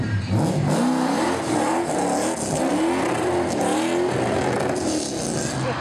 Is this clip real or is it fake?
real